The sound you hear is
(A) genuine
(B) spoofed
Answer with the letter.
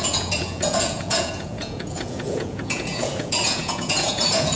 B